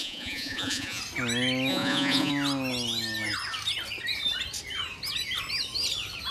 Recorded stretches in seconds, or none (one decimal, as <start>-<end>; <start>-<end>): 1.0-1.7; 2.3-6.3